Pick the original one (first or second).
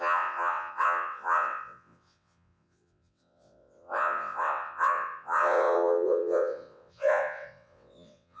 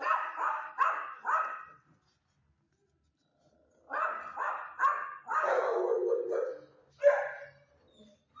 second